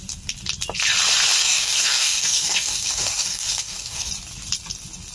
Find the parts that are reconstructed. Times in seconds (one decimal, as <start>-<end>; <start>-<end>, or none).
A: 1.4-4.1

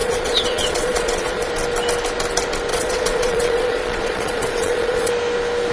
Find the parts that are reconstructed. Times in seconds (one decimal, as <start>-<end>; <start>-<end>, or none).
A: 0.0-1.5; 2.7-5.1

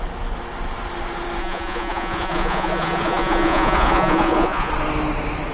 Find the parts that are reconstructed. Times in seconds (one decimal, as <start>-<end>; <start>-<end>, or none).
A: 1.4-4.7

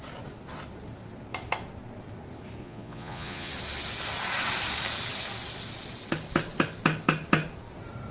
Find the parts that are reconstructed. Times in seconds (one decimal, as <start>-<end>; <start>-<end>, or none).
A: 2.6-3.5

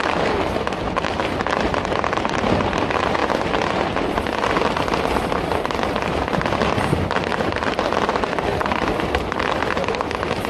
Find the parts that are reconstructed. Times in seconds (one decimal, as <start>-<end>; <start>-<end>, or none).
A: 0.0-10.5

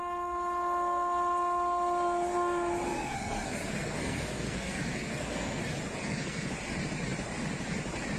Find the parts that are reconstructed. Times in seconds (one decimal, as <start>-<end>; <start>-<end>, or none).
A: 2.9-5.6; 6.0-6.5